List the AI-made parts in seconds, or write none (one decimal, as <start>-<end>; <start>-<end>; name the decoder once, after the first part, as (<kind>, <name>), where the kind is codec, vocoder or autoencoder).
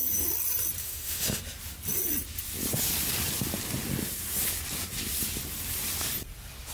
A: 0.8-1.4 (autoencoder, DAC-VAE)